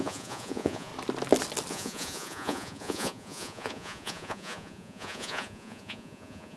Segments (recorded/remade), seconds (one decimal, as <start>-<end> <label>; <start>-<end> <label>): 0.0-0.9 remade; 0.9-1.7 recorded; 1.7-6.6 remade